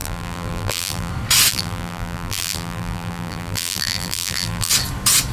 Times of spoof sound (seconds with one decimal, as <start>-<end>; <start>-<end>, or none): 0.0-1.1; 1.5-4.7